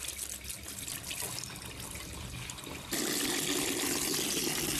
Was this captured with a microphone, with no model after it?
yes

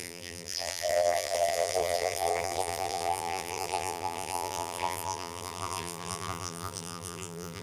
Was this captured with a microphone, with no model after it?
no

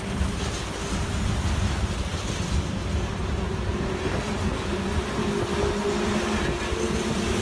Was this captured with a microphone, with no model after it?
yes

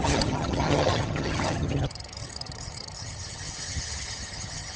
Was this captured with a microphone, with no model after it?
no